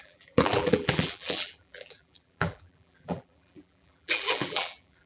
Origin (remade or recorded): remade